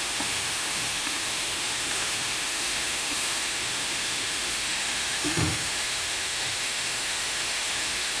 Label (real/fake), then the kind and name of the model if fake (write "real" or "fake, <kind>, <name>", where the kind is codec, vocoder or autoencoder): fake, autoencoder, DAC-VAE